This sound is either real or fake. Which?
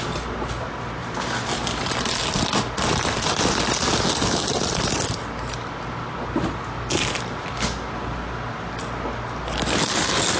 real